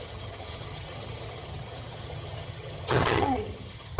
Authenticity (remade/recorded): remade